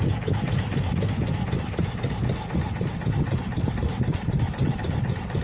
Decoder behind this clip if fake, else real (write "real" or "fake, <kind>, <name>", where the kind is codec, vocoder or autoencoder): real